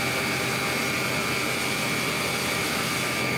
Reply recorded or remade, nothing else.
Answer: recorded